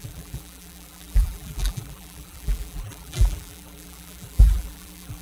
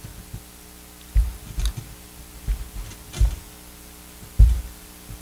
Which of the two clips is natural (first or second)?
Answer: second